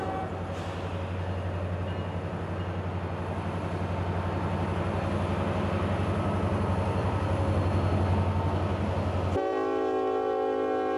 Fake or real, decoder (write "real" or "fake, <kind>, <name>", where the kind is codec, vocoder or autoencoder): real